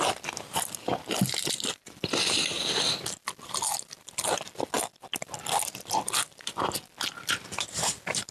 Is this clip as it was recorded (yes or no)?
no